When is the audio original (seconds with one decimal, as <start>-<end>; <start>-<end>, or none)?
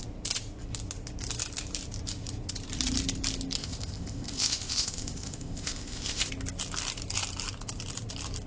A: 0.0-3.6; 6.3-8.5